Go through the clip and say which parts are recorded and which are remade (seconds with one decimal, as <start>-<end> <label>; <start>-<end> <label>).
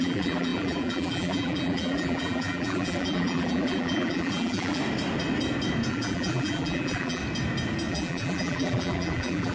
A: 0.0-4.8 remade; 4.8-5.9 recorded; 5.9-7.2 remade; 7.2-7.9 recorded; 7.9-9.5 remade